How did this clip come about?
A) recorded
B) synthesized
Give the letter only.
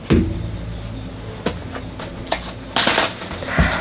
A